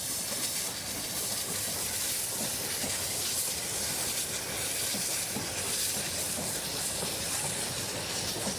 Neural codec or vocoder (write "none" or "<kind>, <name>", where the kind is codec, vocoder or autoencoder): none